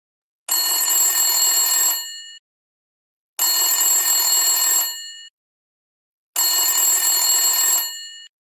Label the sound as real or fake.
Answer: real